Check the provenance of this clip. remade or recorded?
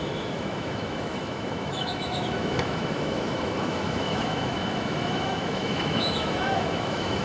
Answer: remade